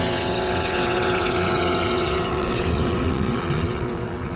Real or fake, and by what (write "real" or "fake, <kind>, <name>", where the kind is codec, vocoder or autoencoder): fake, vocoder, WaveNeXt